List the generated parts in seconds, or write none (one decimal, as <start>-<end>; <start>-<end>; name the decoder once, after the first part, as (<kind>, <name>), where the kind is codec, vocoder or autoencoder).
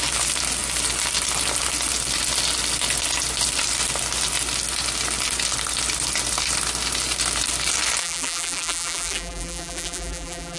8.0-10.6 (vocoder, BigVGAN v2)